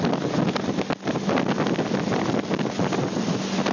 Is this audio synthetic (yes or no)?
no